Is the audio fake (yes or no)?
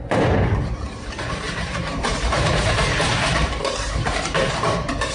yes